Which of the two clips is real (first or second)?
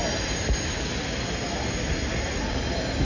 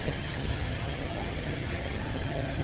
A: first